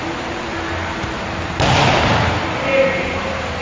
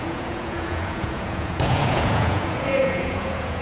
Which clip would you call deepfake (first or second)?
second